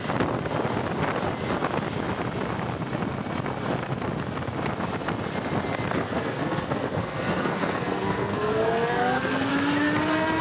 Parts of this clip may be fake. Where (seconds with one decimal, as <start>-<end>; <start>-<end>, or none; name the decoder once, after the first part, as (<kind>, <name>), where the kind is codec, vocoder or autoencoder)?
5.9-9.5 (codec, SNAC)